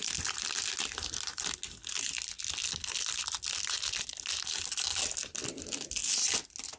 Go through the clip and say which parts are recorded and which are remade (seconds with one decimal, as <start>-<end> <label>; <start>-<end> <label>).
0.0-6.8 recorded